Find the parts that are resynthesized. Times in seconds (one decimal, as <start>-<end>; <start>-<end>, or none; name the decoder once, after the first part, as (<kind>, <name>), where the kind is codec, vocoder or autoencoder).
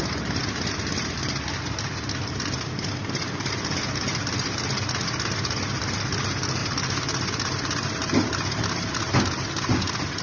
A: none